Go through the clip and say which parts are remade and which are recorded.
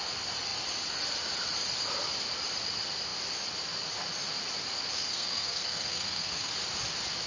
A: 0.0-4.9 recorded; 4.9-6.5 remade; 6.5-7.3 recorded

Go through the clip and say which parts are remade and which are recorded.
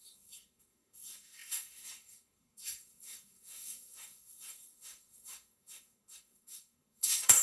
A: 0.0-7.4 remade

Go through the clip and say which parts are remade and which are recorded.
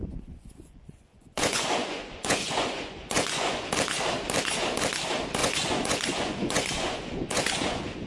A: 0.0-3.7 remade; 3.7-5.4 recorded; 5.4-8.1 remade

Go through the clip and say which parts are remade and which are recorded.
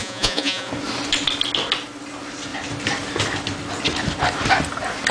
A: 0.0-0.7 remade; 0.7-5.1 recorded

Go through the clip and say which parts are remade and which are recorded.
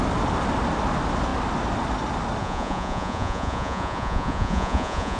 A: 0.0-2.4 recorded; 2.4-5.2 remade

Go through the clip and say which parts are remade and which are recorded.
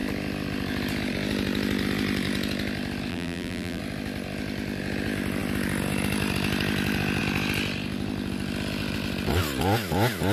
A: 0.0-3.1 recorded; 3.1-3.8 remade; 3.8-10.3 recorded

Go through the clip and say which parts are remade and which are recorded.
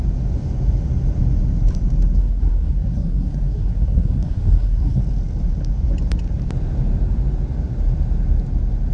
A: 0.0-2.2 recorded; 2.2-5.0 remade; 5.0-8.9 recorded